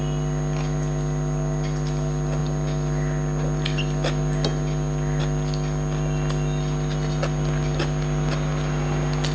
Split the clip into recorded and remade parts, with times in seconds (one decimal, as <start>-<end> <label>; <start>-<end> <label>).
0.0-9.3 recorded